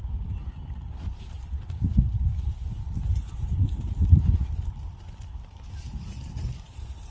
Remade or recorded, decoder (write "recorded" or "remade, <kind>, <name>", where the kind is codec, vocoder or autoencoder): recorded